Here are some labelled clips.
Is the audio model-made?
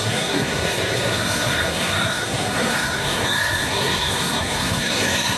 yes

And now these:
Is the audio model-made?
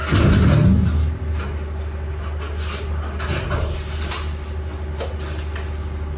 no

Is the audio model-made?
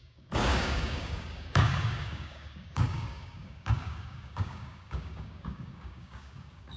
yes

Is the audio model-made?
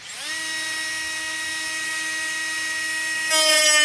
no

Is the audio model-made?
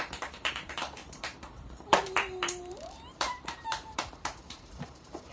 yes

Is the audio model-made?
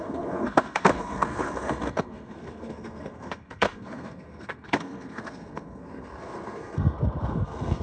yes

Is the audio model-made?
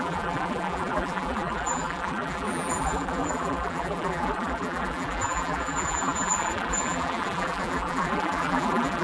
yes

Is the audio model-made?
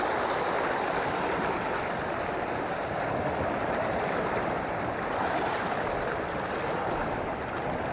no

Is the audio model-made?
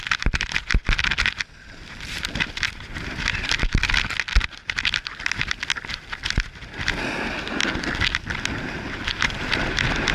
no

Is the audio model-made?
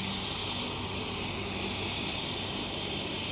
no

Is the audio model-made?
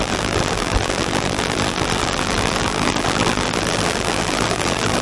yes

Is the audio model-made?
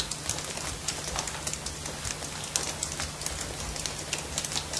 no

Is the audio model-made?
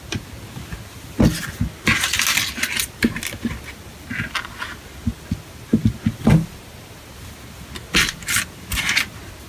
no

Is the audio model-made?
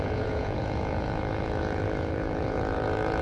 yes